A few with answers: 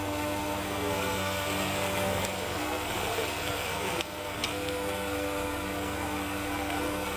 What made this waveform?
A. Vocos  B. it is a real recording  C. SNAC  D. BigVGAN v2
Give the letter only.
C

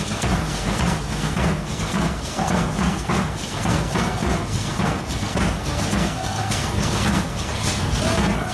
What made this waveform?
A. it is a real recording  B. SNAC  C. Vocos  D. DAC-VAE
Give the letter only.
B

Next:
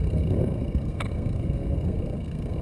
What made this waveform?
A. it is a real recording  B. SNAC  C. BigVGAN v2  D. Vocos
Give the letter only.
B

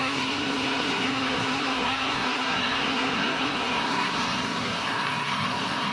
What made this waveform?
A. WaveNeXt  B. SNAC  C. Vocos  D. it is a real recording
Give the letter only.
B